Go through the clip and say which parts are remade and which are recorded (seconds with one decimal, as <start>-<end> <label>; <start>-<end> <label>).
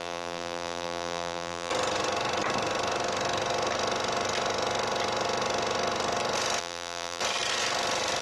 0.0-1.7 remade; 1.7-6.6 recorded; 6.6-7.2 remade; 7.2-8.2 recorded